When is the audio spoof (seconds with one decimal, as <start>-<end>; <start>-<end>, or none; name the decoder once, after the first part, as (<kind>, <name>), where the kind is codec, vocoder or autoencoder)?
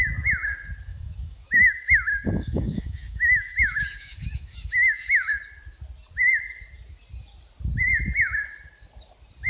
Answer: 0.9-5.3 (autoencoder, DAC-VAE)